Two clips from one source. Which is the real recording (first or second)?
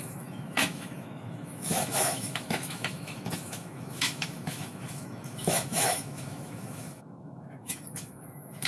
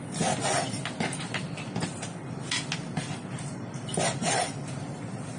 second